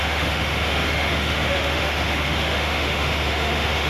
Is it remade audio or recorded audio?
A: remade